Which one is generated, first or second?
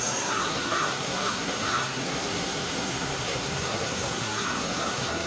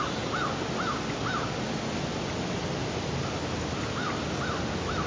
first